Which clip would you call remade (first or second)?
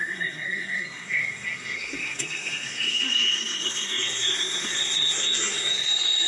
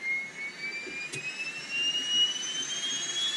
first